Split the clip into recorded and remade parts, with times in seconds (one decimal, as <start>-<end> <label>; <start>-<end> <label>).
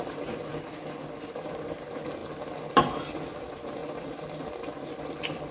0.0-0.5 remade; 0.5-1.2 recorded; 1.2-2.2 remade; 2.2-2.7 recorded; 2.7-5.5 remade